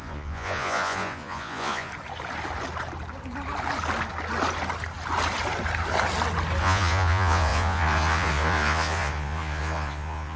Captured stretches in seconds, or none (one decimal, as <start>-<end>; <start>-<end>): 1.9-6.6